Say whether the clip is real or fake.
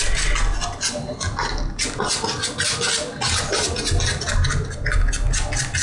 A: real